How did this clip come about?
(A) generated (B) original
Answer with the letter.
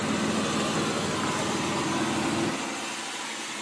B